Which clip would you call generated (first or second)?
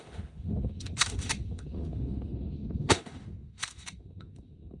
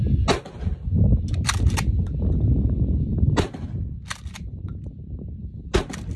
first